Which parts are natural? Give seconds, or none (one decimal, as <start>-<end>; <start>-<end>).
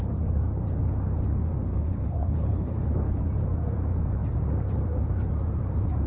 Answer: 0.0-1.7; 3.2-6.1